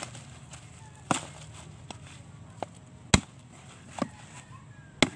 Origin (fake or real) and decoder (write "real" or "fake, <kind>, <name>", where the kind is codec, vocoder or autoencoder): real